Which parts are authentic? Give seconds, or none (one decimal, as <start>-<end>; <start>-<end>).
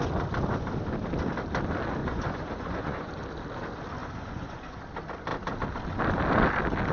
0.0-2.0; 3.1-4.0; 4.8-6.9